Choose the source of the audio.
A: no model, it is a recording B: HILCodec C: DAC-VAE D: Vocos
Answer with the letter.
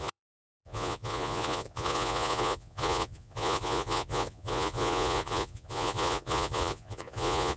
D